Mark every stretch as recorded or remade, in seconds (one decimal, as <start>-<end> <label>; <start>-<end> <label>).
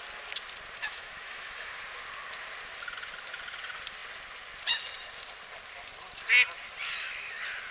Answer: 0.0-0.8 recorded; 0.8-1.8 remade; 1.8-7.7 recorded